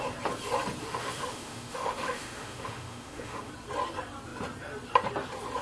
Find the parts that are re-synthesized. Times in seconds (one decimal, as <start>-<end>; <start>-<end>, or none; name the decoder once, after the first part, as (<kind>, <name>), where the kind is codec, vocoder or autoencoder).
0.8-3.5 (autoencoder, DAC-VAE)